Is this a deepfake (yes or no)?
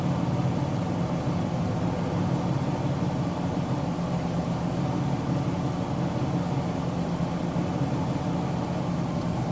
no